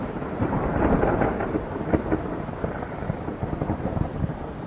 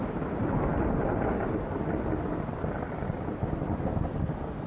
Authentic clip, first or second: second